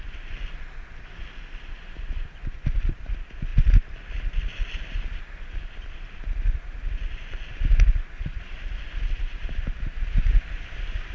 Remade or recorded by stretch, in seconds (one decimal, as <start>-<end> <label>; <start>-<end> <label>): 0.0-11.1 recorded